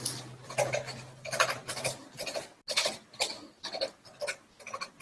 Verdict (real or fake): real